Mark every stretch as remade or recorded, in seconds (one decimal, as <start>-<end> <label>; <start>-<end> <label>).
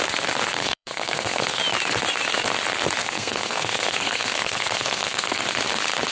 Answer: 0.0-0.6 recorded; 0.6-1.6 remade; 1.6-3.0 recorded; 3.0-5.4 remade; 5.4-6.1 recorded